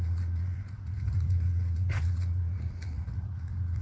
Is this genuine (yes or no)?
no